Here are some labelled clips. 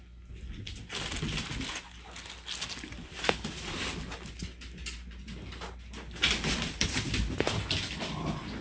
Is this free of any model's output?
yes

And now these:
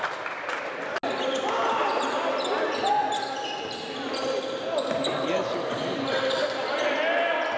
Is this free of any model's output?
yes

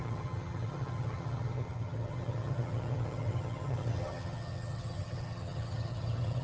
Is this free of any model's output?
no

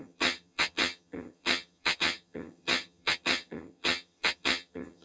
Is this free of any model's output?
no